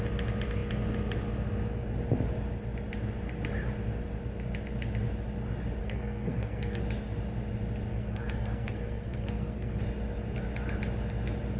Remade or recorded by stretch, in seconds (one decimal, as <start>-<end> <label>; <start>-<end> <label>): 0.0-5.8 recorded; 5.8-6.8 remade; 6.8-7.9 recorded; 7.9-9.8 remade; 9.8-11.6 recorded